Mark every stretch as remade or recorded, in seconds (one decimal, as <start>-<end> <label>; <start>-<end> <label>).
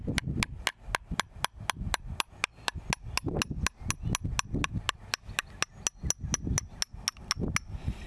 0.0-8.1 recorded